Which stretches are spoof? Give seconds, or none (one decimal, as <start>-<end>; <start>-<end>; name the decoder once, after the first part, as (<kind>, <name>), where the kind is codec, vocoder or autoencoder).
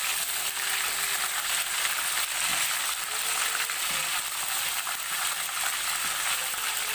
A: none